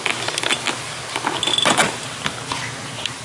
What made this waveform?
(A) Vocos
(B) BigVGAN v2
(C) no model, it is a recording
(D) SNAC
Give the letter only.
C